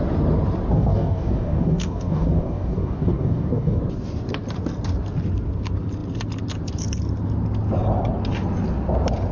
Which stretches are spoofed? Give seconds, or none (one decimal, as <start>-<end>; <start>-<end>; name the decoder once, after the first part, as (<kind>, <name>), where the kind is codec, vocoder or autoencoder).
0.7-3.8 (codec, DAC)